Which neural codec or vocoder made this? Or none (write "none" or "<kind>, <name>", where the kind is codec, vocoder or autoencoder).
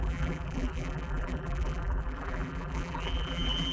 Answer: vocoder, BigVGAN v2